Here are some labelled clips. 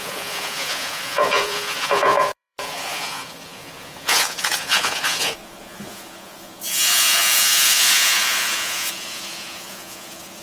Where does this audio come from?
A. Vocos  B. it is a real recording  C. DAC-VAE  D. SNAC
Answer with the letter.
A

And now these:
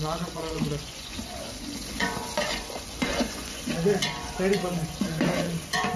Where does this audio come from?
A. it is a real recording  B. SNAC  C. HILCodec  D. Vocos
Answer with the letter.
D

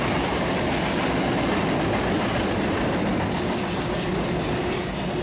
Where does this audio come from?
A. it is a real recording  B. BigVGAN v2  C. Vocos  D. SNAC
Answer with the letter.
A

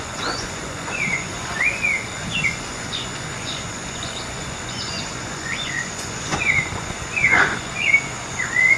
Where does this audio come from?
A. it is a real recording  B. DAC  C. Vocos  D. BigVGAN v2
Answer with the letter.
C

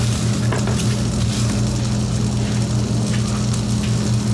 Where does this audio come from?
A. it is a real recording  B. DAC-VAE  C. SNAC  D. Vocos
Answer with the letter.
A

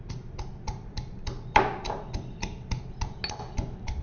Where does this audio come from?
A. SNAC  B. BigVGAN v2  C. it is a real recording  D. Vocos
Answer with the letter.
C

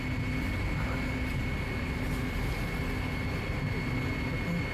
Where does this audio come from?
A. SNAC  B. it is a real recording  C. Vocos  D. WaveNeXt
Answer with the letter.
B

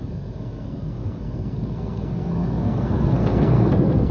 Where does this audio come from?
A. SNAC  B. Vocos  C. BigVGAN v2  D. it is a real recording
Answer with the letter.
A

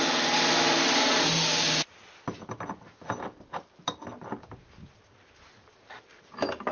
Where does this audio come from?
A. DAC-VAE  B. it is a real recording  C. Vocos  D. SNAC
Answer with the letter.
B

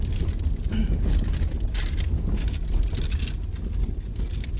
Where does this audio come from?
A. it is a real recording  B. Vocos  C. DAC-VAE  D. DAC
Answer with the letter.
A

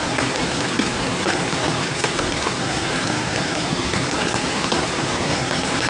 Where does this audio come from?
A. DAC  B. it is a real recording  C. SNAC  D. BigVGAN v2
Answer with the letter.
C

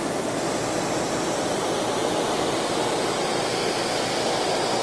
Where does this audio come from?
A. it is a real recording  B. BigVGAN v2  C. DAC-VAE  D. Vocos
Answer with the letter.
A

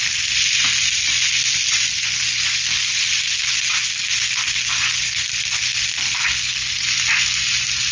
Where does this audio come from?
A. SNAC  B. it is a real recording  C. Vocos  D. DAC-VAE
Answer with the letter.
B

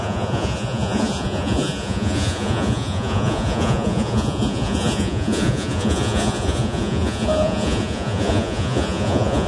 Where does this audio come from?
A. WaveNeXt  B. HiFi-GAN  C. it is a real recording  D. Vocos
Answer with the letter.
D